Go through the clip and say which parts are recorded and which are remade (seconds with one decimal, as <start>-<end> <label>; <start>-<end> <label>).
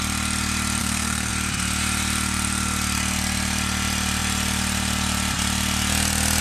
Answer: 0.0-0.8 recorded; 0.8-1.3 remade; 1.3-6.4 recorded